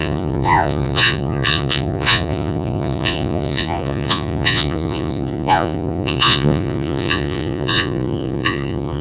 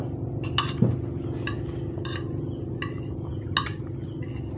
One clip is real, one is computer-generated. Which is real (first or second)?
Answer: second